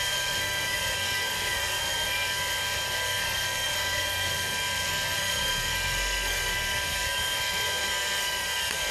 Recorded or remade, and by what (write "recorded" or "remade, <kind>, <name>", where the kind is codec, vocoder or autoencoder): remade, codec, SNAC